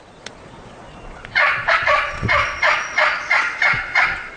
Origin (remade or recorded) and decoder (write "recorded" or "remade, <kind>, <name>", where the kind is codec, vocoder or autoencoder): remade, vocoder, Vocos